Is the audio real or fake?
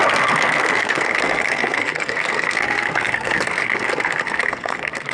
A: fake